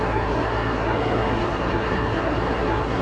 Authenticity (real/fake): fake